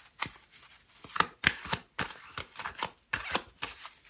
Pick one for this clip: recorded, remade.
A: recorded